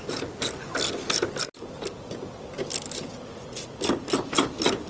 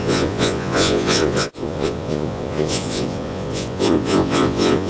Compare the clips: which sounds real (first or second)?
first